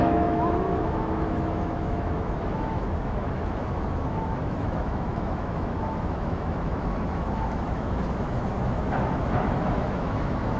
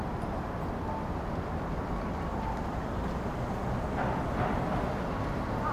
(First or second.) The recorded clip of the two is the second